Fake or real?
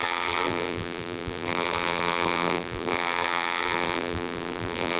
fake